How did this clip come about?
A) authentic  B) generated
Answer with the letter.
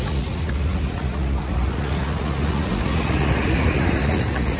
B